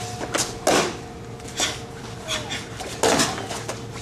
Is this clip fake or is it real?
real